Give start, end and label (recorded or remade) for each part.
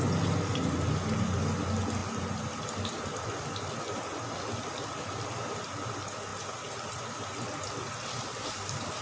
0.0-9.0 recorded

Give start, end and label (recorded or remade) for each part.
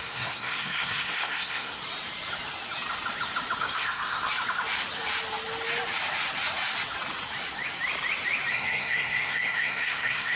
0.0-1.8 remade; 1.8-3.6 recorded; 3.6-4.3 remade; 4.3-8.5 recorded; 8.5-10.4 remade